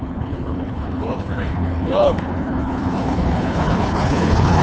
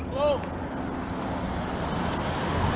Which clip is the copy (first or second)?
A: first